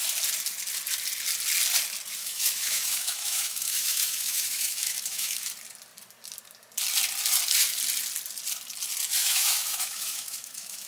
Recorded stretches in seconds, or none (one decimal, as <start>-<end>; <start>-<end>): 0.0-2.2; 5.5-9.2